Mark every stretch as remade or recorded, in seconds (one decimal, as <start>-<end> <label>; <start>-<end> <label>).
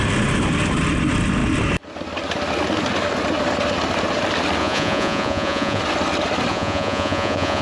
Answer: 0.0-4.6 recorded; 4.6-5.8 remade; 5.8-6.5 recorded; 6.5-7.6 remade